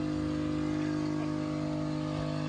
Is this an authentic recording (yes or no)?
yes